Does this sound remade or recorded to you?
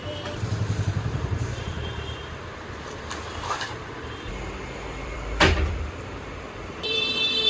remade